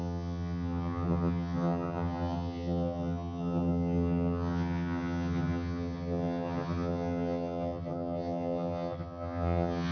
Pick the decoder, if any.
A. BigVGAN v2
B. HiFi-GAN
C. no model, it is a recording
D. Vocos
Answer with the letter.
B